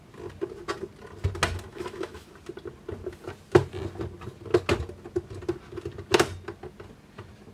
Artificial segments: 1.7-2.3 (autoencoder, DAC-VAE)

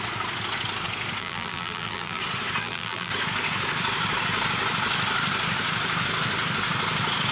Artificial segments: 1.2-2.2 (vocoder, BigVGAN v2); 2.6-3.1